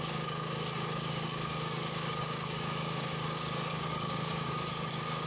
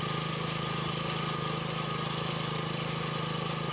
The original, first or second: second